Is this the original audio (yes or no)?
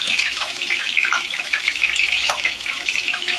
no